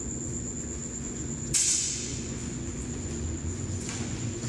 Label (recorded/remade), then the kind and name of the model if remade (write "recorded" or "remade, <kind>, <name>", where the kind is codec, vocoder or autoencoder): remade, vocoder, Vocos